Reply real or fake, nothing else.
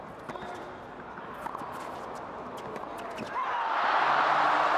real